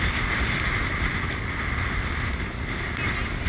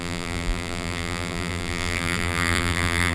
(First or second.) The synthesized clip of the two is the second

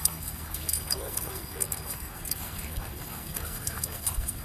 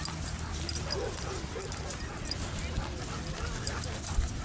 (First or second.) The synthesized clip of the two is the first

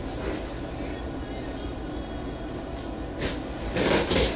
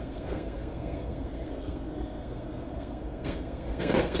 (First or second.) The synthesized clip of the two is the second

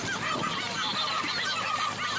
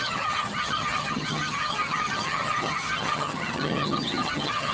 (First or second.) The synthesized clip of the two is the second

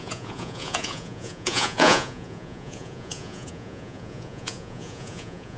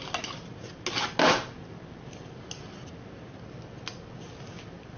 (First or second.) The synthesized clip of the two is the first